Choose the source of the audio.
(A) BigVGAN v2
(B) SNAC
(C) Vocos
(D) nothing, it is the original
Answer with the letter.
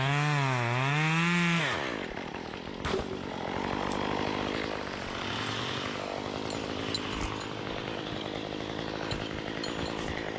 D